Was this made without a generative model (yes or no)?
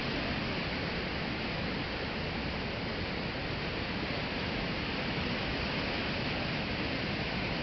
yes